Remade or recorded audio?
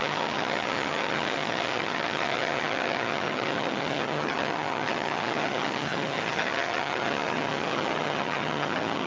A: remade